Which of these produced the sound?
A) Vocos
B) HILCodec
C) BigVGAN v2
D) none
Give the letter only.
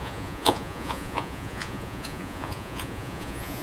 A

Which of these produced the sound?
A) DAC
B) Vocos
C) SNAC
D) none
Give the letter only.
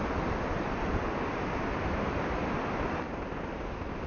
D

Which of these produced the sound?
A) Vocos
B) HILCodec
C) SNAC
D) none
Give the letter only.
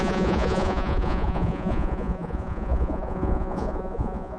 A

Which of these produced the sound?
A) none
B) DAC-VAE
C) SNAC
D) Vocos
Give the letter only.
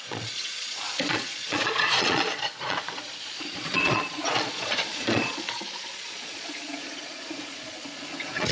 D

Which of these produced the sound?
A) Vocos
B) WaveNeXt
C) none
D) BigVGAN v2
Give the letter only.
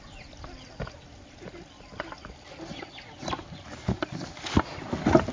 C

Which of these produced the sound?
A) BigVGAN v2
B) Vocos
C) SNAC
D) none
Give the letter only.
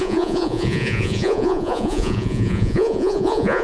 B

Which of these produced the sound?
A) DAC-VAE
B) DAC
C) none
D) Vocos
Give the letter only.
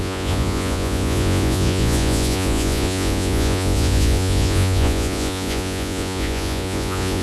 D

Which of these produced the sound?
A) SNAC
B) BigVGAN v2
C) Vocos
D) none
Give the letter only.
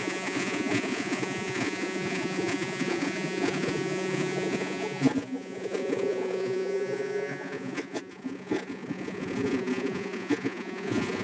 C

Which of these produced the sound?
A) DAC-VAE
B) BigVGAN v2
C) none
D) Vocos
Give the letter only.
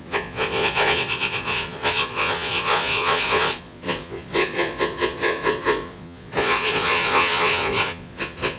D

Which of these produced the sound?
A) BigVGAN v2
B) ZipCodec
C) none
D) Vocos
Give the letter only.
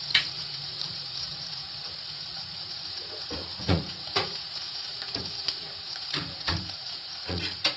D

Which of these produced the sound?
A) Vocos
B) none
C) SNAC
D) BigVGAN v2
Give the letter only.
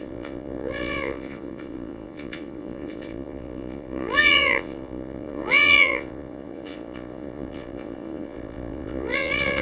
A